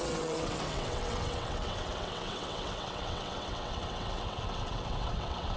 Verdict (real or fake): fake